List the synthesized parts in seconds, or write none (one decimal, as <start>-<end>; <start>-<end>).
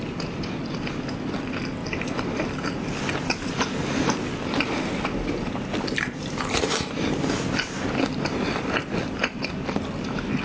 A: none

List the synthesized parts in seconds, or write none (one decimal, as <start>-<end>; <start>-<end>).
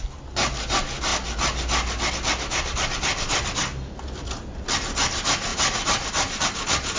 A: none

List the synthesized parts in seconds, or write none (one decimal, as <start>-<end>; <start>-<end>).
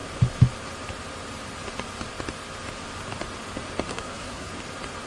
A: 3.9-4.5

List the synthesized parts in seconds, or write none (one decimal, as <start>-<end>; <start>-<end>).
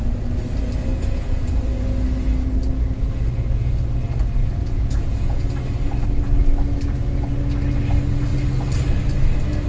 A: 0.9-1.6; 4.4-5.5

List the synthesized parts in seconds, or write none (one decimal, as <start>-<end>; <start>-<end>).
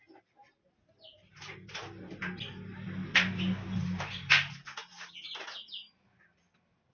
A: none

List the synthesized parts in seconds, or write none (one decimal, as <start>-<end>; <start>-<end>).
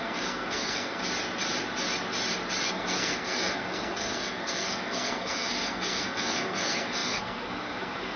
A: 0.0-1.0; 2.7-8.2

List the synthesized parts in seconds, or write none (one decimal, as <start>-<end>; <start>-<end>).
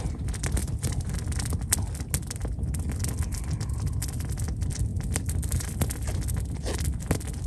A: 0.6-1.1; 4.9-5.7